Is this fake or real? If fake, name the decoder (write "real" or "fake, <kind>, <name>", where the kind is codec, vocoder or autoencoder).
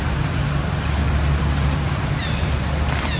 real